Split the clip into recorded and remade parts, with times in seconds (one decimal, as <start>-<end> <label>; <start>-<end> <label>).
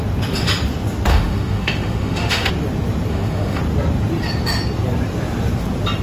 0.0-1.1 recorded; 1.1-2.5 remade; 2.5-3.1 recorded; 3.1-3.6 remade; 3.6-6.0 recorded